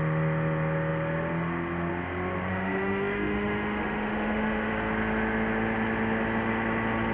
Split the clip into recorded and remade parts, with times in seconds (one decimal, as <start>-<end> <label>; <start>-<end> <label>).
0.0-2.5 recorded; 2.5-4.7 remade; 4.7-7.1 recorded